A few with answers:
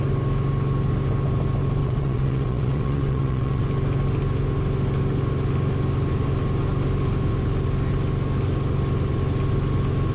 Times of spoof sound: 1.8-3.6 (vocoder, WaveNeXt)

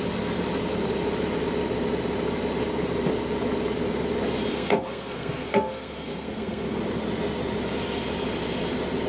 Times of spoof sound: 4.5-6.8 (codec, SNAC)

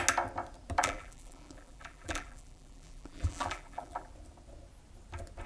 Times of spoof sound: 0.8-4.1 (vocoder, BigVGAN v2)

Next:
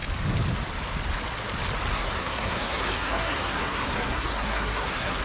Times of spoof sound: 1.9-5.2 (codec, SNAC)